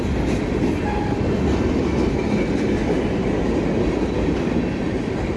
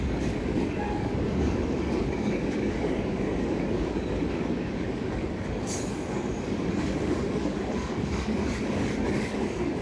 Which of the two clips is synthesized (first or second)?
second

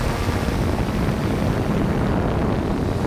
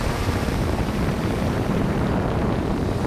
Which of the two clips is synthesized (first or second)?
second